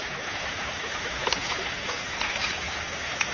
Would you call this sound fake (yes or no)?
yes